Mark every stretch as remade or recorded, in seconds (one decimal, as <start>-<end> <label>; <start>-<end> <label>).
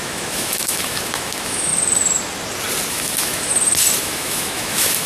0.0-1.7 remade; 1.7-2.9 recorded; 2.9-3.5 remade; 3.5-4.0 recorded; 4.0-5.1 remade